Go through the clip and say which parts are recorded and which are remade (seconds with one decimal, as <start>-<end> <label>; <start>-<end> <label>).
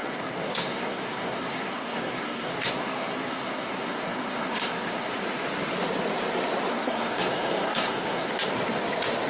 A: 0.0-5.1 remade; 5.1-6.7 recorded; 6.7-8.3 remade; 8.3-9.3 recorded